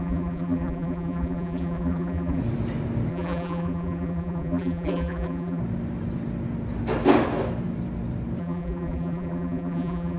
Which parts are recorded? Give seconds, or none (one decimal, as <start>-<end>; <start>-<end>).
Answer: 2.4-3.1; 5.6-8.4